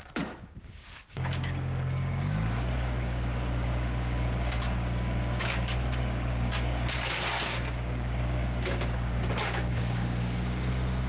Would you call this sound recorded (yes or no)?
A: no